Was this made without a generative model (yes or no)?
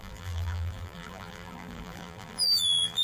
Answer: no